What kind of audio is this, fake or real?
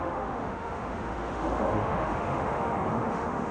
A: fake